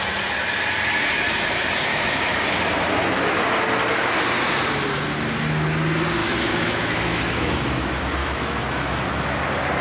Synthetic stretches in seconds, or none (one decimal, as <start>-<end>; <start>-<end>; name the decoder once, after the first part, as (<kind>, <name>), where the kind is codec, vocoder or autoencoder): 1.9-2.6 (autoencoder, DAC-VAE); 6.2-7.6; 8.2-9.0